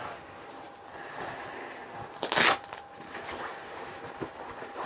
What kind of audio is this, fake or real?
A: real